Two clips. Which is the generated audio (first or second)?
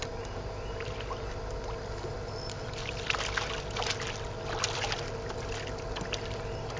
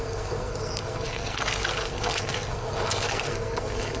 second